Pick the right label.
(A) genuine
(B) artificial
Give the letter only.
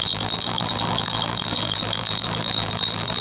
B